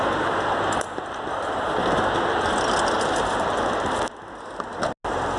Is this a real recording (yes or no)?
yes